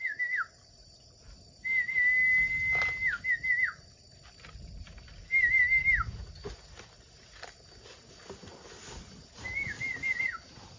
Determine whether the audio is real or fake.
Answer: real